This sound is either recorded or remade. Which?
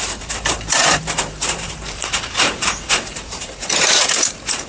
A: remade